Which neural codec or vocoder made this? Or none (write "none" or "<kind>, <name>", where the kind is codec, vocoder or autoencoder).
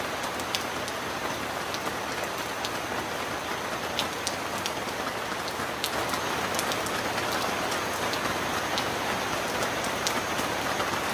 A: none